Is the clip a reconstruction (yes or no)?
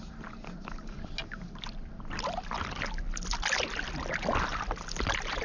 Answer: no